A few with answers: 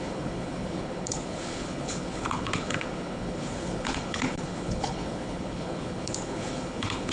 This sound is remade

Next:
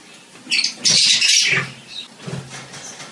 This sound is recorded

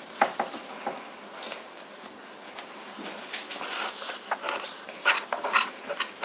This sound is recorded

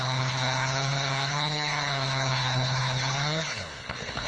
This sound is remade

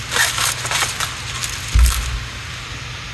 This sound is recorded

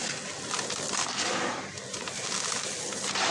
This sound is recorded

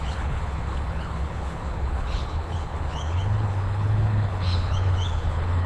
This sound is remade